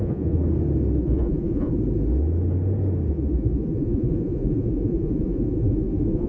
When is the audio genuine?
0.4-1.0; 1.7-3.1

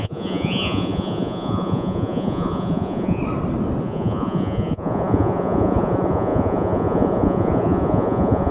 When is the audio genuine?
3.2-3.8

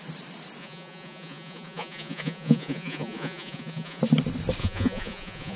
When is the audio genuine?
0.0-0.6; 4.0-4.6

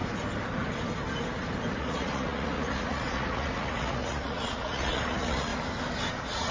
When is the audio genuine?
0.0-1.7; 5.5-6.1

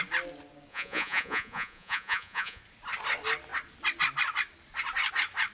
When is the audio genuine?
0.0-0.7; 2.6-5.5